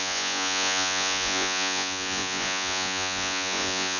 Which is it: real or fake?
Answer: fake